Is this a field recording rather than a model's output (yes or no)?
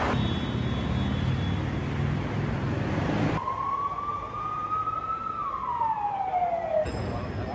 yes